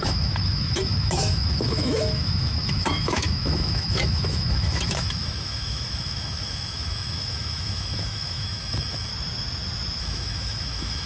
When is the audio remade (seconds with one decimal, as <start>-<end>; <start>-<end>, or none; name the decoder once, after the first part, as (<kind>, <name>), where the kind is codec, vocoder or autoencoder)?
0.0-9.1 (autoencoder, DAC-VAE); 10.0-11.1